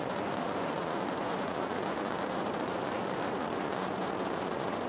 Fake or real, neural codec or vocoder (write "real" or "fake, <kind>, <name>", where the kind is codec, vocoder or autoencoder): fake, vocoder, Vocos